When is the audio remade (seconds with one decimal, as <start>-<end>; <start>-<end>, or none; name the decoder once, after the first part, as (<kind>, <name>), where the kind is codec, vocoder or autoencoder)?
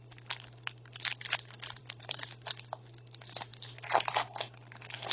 1.8-2.5 (vocoder, BigVGAN v2)